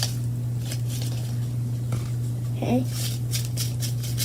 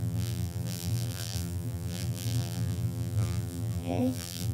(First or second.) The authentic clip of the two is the first